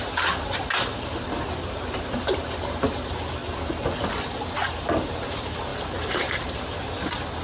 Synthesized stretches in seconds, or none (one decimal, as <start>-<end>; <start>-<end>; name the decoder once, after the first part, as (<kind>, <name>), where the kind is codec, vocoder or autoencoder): 0.0-3.4 (vocoder, BigVGAN v2); 4.5-7.4